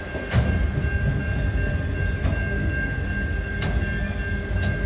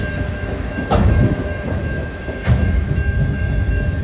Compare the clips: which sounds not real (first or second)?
second